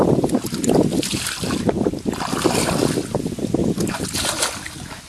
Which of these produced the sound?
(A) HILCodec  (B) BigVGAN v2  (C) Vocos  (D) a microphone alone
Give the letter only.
D